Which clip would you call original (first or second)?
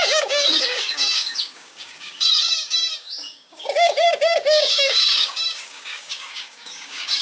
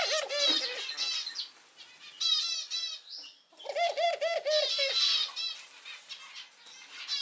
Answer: second